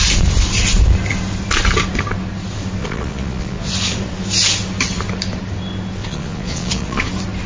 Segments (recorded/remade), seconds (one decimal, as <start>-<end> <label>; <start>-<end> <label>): 0.0-2.8 recorded; 2.8-3.7 remade; 3.7-6.0 recorded; 6.0-7.1 remade; 7.1-7.5 recorded